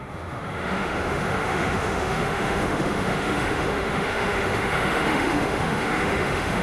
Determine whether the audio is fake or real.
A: fake